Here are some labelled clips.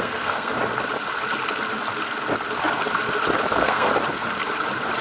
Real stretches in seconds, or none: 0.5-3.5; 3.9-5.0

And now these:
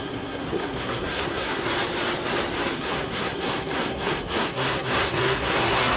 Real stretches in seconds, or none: 1.7-2.7

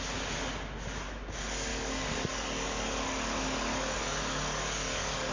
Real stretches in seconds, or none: 0.0-1.7

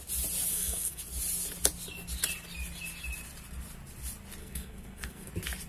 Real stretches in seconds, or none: 0.0-0.5; 1.0-4.4; 5.3-5.7